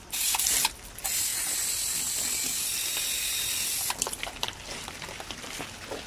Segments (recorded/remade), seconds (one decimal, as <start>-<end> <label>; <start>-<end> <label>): 0.0-6.1 recorded